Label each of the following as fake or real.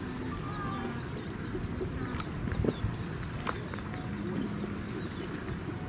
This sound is real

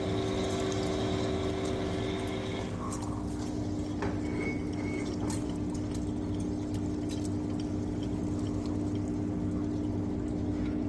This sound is real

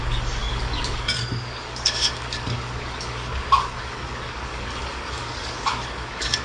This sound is fake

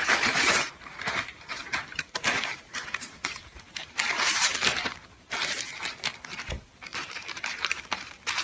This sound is fake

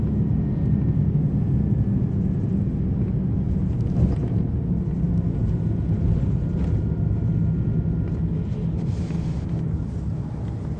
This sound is real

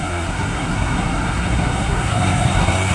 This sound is fake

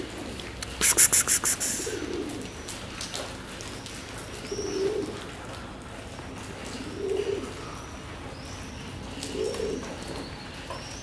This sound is real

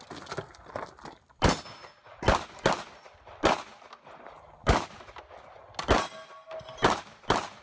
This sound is real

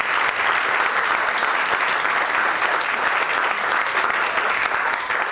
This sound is real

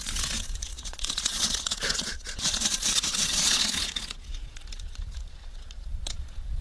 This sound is fake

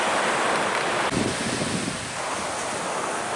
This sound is real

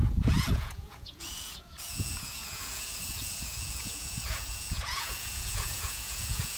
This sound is fake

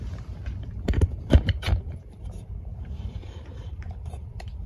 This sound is fake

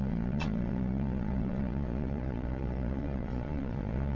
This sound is fake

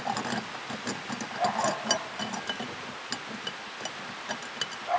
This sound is real